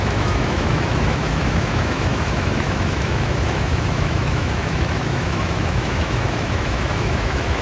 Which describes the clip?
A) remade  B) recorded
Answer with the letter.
A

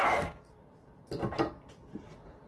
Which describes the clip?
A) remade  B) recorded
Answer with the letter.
B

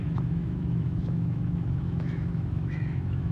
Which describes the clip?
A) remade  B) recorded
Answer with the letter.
A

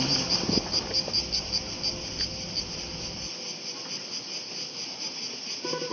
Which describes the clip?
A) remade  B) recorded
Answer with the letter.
B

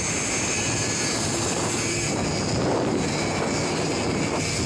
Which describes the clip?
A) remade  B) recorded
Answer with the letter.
A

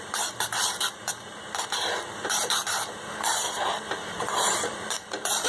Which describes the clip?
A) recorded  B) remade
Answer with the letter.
B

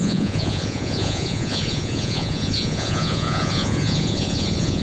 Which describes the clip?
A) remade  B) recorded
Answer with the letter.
A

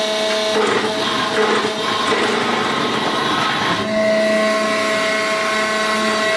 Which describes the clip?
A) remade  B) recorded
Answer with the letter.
B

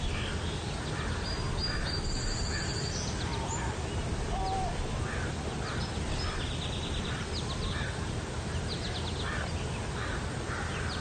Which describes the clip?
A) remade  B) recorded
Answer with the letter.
B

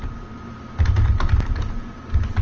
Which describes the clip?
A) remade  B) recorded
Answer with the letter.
B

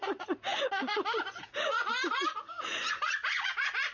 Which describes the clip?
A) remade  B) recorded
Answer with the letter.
A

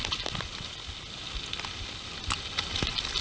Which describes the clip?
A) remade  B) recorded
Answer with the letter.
B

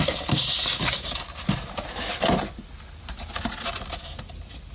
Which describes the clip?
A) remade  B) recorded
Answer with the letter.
B